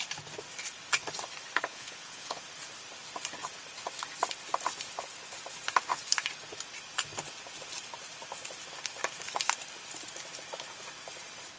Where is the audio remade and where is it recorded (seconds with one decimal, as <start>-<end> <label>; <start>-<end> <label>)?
0.0-1.7 recorded; 1.7-2.4 remade; 2.4-11.6 recorded

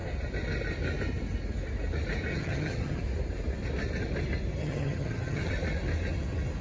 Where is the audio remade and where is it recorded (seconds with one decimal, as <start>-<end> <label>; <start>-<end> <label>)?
0.0-2.3 recorded; 2.3-3.0 remade; 3.0-4.6 recorded; 4.6-5.5 remade; 5.5-6.6 recorded

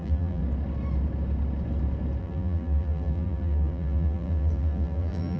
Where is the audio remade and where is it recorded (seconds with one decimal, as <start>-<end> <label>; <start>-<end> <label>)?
0.0-0.4 remade; 0.4-2.2 recorded; 2.2-5.4 remade

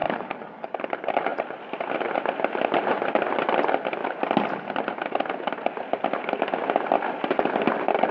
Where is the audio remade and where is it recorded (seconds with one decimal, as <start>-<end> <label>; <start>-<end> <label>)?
0.0-0.8 remade; 0.8-8.1 recorded

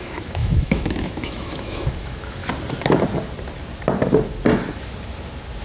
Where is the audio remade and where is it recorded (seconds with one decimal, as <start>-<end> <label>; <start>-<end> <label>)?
0.0-2.4 remade; 2.4-5.6 recorded

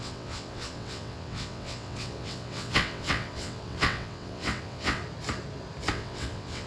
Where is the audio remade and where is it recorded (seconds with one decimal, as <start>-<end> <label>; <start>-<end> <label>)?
0.0-5.0 remade; 5.0-5.9 recorded; 5.9-6.7 remade

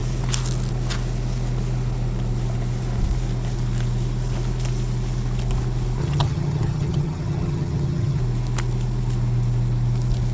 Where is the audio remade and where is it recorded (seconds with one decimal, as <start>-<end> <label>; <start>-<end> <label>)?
0.0-6.0 recorded; 6.0-8.2 remade; 8.2-10.3 recorded

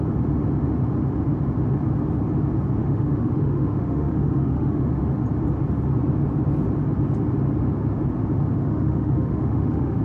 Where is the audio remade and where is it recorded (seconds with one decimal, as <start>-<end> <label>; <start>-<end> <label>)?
0.0-2.8 recorded; 2.8-5.0 remade; 5.0-8.6 recorded; 8.6-10.0 remade